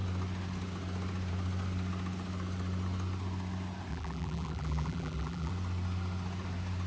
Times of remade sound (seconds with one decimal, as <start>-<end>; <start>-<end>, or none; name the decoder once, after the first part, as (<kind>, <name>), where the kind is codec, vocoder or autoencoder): 3.9-5.5 (vocoder, BigVGAN v2)